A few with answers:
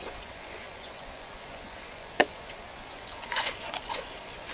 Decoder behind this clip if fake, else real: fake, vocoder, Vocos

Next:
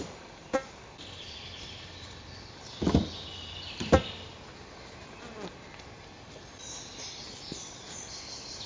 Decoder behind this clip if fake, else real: real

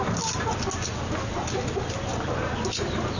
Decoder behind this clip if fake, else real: real